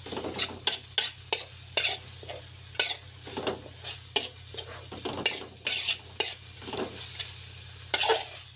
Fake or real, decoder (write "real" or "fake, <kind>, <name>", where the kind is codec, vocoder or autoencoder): real